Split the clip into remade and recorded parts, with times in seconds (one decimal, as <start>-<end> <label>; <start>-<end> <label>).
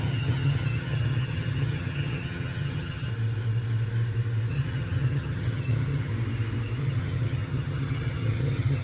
0.0-3.1 remade; 3.1-4.5 recorded; 4.5-6.1 remade; 6.1-6.8 recorded; 6.8-8.8 remade